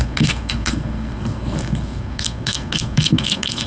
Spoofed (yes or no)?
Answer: yes